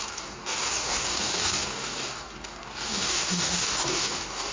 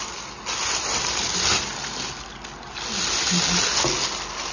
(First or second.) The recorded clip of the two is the second